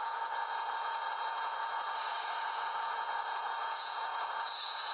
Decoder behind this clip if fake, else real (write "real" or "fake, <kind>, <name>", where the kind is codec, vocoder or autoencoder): fake, vocoder, Vocos